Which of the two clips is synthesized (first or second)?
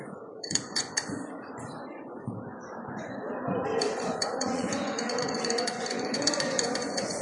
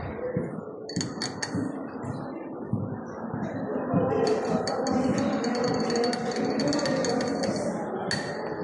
first